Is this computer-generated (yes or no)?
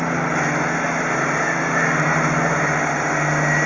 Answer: no